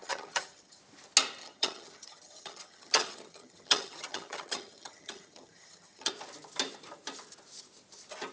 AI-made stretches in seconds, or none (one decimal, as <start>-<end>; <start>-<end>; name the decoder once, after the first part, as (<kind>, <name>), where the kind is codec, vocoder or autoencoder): 0.0-0.8 (vocoder, HiFi-GAN); 1.4-6.1